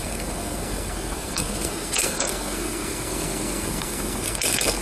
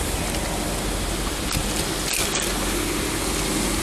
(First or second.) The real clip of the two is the second